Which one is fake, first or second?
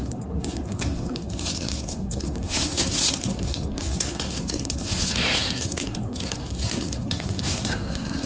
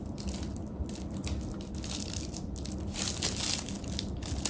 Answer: first